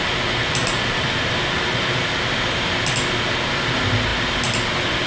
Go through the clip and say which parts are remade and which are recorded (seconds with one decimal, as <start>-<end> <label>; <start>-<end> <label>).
0.0-5.1 recorded